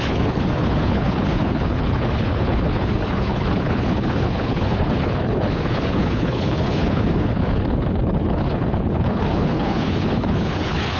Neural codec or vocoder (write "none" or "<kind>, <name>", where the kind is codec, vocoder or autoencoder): codec, HILCodec